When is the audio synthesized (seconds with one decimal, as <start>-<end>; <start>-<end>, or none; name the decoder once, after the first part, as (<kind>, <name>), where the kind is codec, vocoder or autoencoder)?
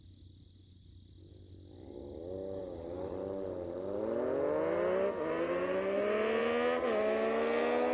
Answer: none